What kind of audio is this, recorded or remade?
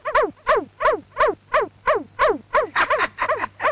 recorded